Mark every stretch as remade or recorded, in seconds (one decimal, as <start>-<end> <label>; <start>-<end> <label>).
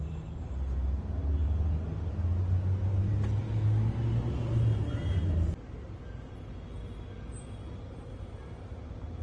0.0-9.2 recorded